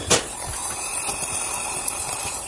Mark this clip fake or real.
real